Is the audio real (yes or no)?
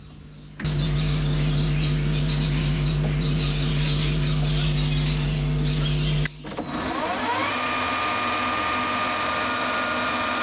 yes